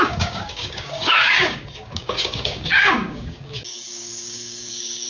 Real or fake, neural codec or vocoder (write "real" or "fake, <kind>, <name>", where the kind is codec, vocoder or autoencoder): fake, codec, DAC